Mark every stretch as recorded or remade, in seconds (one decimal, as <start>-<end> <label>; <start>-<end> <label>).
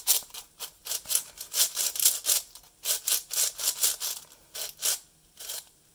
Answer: 0.0-0.6 remade; 0.6-1.4 recorded; 1.4-2.2 remade; 2.2-5.4 recorded; 5.4-5.9 remade